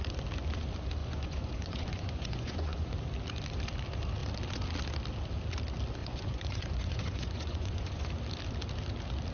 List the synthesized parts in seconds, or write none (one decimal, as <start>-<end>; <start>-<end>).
1.0-2.9; 6.0-8.1